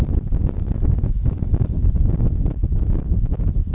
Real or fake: real